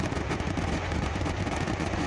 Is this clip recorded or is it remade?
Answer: remade